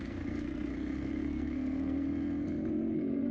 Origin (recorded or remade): remade